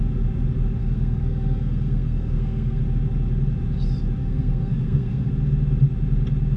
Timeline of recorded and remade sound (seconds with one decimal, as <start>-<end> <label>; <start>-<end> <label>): 0.0-0.8 recorded; 0.8-2.8 remade; 2.8-4.2 recorded; 4.2-5.3 remade; 5.3-6.6 recorded